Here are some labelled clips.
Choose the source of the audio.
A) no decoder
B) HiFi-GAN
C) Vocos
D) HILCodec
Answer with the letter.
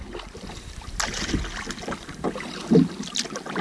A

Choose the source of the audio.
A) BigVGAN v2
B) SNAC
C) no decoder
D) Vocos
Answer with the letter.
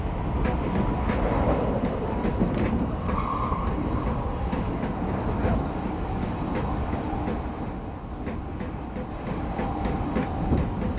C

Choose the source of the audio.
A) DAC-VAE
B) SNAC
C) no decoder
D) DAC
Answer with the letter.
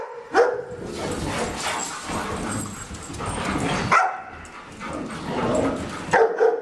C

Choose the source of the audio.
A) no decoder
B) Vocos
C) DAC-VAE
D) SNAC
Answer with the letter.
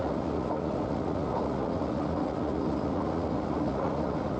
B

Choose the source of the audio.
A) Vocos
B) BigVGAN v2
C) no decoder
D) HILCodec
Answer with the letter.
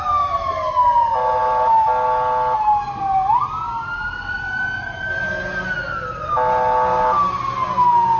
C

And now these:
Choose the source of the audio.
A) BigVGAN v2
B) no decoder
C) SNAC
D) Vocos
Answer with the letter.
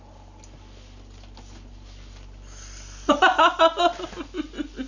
B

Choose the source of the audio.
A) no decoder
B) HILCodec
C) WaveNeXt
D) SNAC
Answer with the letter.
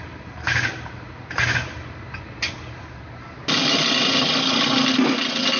A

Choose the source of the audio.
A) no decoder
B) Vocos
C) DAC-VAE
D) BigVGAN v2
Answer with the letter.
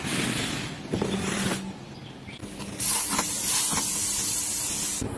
A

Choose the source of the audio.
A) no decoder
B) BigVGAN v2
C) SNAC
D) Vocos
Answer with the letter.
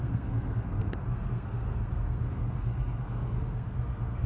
C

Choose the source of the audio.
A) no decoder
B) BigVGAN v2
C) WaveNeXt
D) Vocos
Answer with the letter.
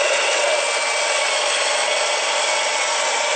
A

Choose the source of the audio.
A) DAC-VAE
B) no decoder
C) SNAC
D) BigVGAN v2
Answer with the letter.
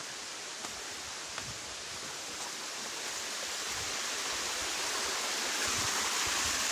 B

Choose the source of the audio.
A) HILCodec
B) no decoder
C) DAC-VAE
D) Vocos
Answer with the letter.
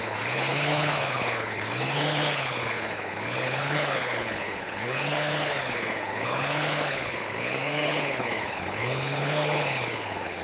A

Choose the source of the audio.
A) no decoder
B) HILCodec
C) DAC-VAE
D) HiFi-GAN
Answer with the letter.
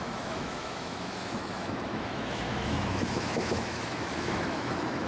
C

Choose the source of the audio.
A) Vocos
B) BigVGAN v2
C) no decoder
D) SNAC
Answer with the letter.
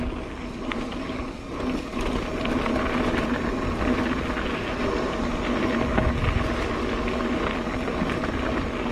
C